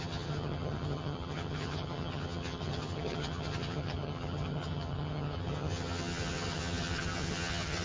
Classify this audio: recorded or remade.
remade